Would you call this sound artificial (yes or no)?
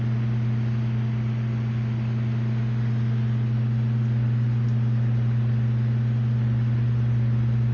no